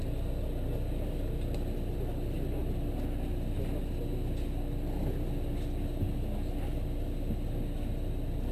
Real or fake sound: real